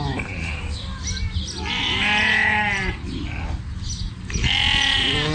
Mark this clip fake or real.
real